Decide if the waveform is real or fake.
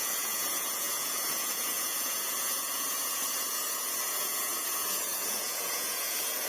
fake